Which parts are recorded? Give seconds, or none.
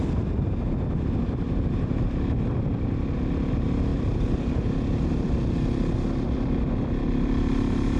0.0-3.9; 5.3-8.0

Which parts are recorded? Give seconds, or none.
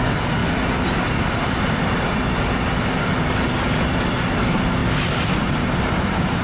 0.4-4.2; 4.8-5.4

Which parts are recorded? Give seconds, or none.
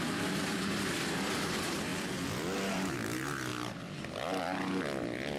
1.9-2.7; 3.5-5.4